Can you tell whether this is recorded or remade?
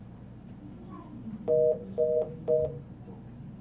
recorded